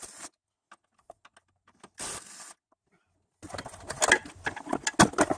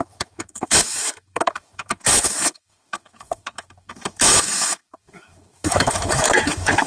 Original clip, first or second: first